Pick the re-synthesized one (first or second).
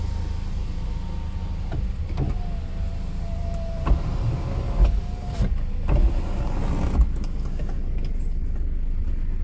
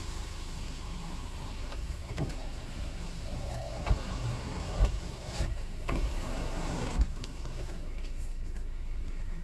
second